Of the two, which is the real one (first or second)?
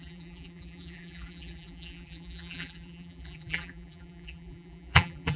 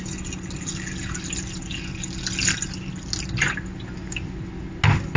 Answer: second